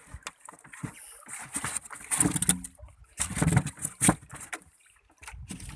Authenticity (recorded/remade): recorded